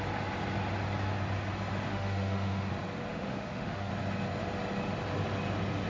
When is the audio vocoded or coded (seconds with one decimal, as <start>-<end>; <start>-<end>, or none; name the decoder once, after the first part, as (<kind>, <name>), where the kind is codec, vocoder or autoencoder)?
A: 1.9-2.7 (autoencoder, DAC-VAE); 3.1-3.9